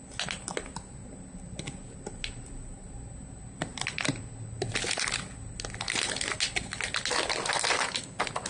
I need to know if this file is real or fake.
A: real